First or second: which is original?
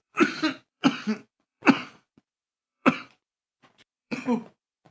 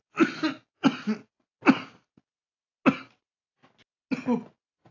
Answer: second